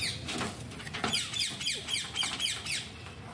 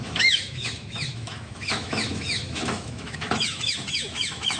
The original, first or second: first